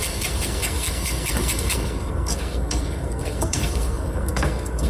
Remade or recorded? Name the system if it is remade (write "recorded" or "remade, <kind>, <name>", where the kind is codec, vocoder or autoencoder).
remade, codec, SNAC